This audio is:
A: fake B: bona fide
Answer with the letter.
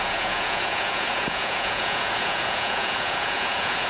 A